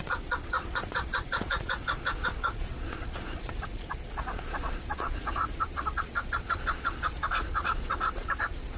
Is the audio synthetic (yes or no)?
yes